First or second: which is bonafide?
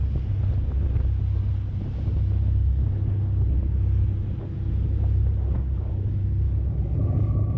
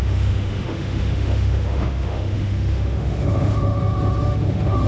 first